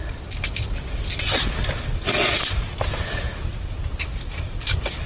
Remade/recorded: recorded